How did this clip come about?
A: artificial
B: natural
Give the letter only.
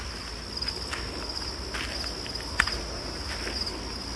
B